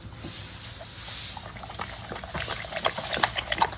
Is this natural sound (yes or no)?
yes